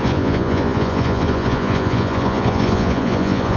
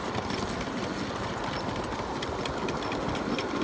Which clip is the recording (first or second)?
second